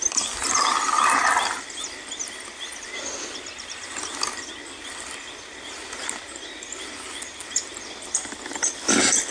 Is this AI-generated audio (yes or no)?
no